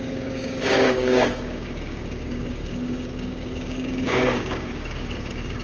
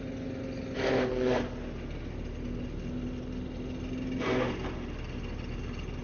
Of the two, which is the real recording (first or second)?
second